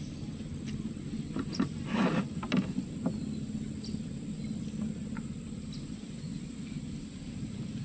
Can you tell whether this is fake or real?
real